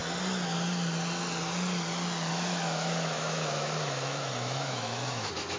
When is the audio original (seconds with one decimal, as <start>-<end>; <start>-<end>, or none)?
0.0-2.3